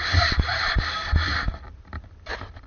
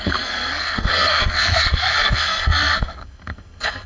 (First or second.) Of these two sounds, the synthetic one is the second